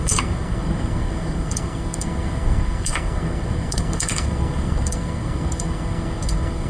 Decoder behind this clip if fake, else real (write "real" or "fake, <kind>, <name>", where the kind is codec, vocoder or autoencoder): fake, codec, SNAC